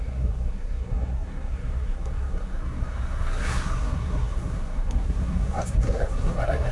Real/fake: fake